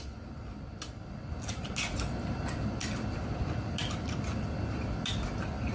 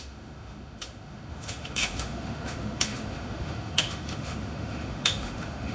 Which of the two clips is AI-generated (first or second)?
second